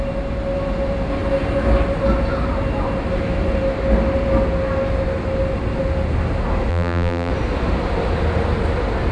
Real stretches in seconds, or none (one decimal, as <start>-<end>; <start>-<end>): 0.0-6.7; 7.3-9.1